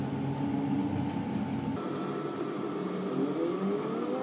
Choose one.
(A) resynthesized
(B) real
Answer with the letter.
B